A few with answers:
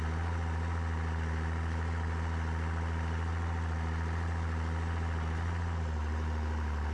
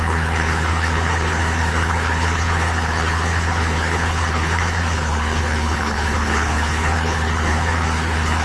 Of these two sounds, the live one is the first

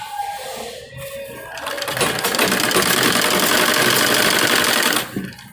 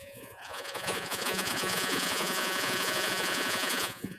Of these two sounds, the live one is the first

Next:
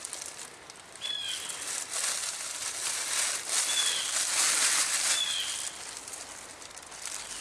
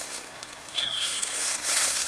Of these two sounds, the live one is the first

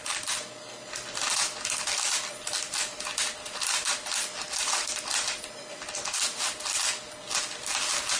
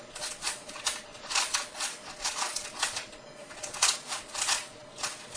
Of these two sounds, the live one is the first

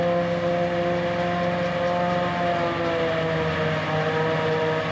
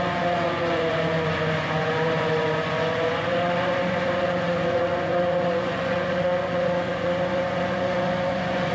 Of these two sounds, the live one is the first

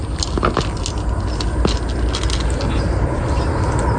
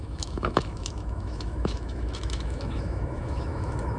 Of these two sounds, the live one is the first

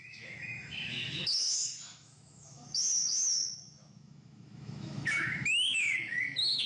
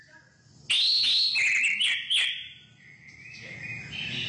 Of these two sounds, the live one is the second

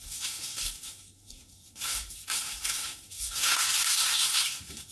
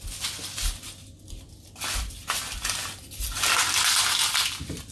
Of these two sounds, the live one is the second